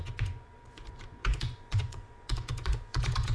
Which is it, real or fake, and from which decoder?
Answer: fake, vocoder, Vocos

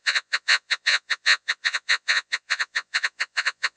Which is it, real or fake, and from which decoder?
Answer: fake, vocoder, Vocos